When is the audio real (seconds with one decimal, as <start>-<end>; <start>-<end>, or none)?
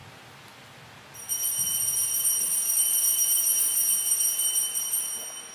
0.0-5.5